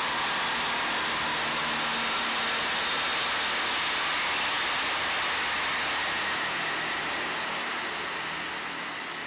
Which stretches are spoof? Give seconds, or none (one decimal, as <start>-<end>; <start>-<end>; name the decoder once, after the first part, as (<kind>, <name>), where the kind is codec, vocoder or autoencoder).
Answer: none